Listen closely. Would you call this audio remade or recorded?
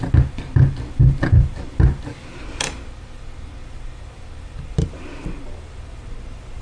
recorded